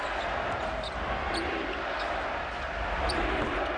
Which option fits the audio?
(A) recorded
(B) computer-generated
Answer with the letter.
A